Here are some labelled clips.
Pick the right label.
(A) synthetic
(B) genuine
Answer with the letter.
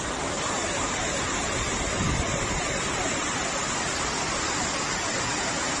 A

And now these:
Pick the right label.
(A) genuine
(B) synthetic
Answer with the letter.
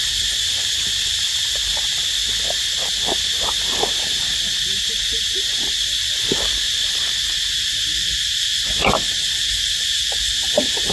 B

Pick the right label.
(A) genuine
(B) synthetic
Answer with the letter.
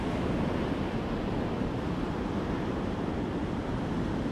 A